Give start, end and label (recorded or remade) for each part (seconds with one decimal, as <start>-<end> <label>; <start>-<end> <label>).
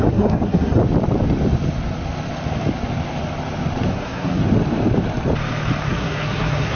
0.0-0.8 remade; 0.8-3.9 recorded; 3.9-4.4 remade; 4.4-5.8 recorded; 5.8-6.8 remade